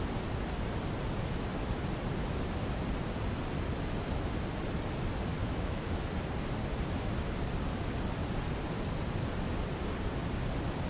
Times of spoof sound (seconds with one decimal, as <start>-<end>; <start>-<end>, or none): 5.4-5.9